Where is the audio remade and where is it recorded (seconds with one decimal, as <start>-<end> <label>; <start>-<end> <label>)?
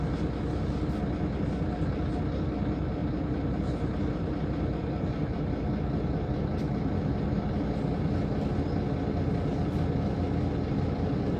0.0-3.0 recorded; 3.0-7.5 remade; 7.5-11.4 recorded